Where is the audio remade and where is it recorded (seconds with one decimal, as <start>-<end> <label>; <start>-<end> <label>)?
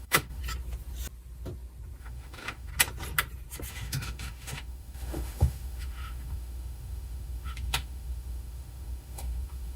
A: 0.0-0.4 remade; 0.4-2.0 recorded; 2.0-2.7 remade; 2.7-3.7 recorded; 3.7-9.8 remade